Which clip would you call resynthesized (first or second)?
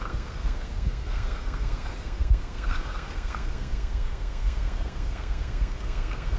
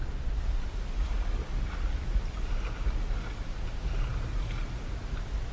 first